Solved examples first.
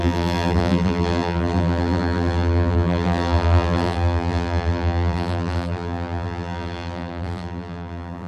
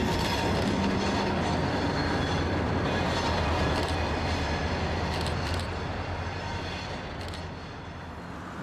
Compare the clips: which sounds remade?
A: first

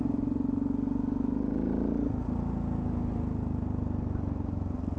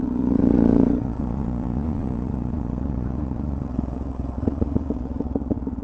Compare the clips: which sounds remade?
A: second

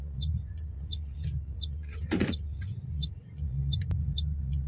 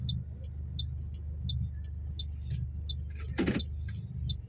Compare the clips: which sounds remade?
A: first